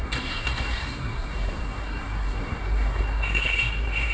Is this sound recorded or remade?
remade